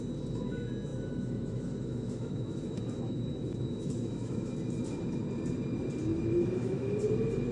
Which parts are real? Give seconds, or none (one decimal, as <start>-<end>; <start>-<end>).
0.0-0.9; 4.5-6.1; 7.0-7.5